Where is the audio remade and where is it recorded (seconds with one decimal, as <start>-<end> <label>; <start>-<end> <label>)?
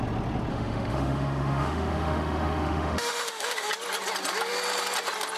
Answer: 0.0-0.5 recorded; 0.5-3.7 remade; 3.7-5.4 recorded